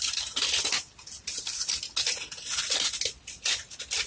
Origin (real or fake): real